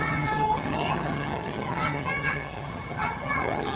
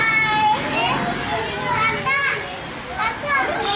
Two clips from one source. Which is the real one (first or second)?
second